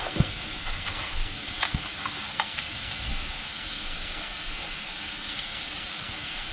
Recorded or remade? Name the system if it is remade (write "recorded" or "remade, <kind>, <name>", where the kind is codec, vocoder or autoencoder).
remade, codec, SNAC